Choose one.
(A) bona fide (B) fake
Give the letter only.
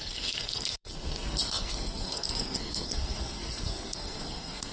B